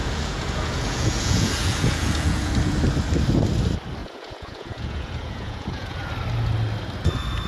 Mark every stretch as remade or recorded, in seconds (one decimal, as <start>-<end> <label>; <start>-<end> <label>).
0.0-2.5 remade; 2.5-4.0 recorded; 4.0-6.1 remade; 6.1-7.5 recorded